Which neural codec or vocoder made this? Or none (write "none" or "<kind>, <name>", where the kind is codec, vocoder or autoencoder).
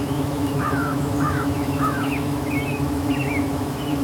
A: autoencoder, DAC-VAE